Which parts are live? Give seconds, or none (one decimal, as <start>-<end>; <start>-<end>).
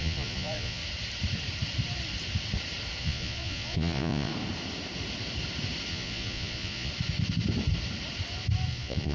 0.8-3.0; 4.3-5.9; 6.9-8.7